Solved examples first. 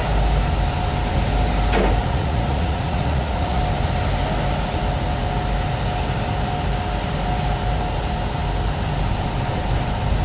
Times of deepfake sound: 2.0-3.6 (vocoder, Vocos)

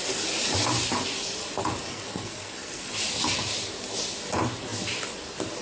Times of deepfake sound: 1.9-2.9 (codec, SNAC)

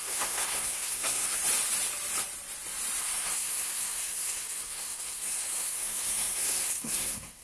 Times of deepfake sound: 0.0-1.4 (codec, SNAC); 3.0-7.4

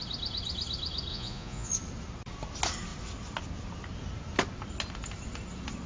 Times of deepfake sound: 1.1-1.7 (vocoder, Vocos)